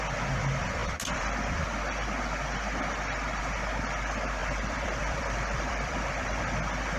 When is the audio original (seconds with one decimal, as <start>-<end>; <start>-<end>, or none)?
0.0-4.4; 6.4-7.0